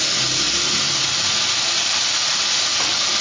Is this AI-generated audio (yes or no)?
no